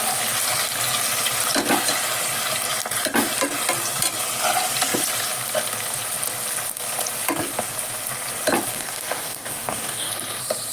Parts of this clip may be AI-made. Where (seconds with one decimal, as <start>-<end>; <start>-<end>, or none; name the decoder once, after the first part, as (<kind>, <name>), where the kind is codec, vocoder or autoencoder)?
8.7-10.1 (codec, DAC)